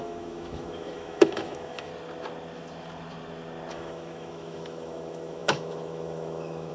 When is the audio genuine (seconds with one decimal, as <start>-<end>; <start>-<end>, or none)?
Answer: 1.9-3.7